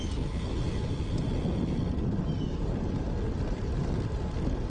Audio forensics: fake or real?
real